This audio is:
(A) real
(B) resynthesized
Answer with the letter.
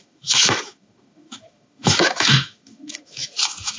B